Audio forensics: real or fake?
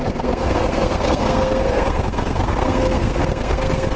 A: fake